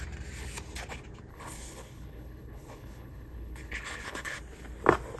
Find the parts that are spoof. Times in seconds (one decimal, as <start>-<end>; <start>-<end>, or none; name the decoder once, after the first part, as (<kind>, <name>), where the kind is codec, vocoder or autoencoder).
1.3-4.4 (codec, HILCodec)